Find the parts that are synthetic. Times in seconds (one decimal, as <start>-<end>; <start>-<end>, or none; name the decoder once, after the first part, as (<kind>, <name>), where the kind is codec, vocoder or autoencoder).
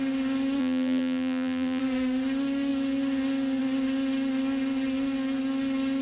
0.6-1.8 (vocoder, BigVGAN v2)